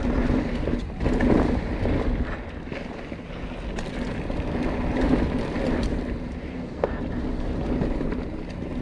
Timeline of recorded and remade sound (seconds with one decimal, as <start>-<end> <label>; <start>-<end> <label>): 0.0-6.5 recorded; 6.5-7.0 remade; 7.0-8.8 recorded

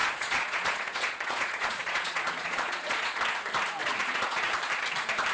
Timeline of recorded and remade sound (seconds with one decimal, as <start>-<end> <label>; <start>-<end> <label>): 0.0-3.2 remade; 3.2-3.8 recorded; 3.8-4.5 remade; 4.5-5.3 recorded

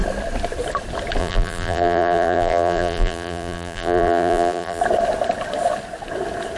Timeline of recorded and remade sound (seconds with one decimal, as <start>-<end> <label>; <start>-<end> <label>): 0.0-1.2 recorded; 1.2-4.8 remade; 4.8-6.6 recorded

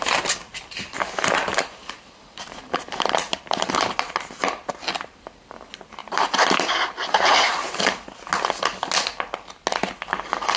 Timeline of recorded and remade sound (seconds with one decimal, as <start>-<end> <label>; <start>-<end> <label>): 0.0-1.5 recorded; 1.5-3.7 remade; 3.7-6.0 recorded; 6.0-7.8 remade; 7.8-10.6 recorded

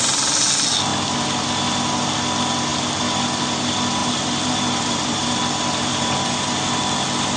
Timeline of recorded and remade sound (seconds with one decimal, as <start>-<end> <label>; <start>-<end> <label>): 0.0-4.0 recorded; 4.0-5.4 remade; 5.4-5.9 recorded; 5.9-6.5 remade; 6.5-7.4 recorded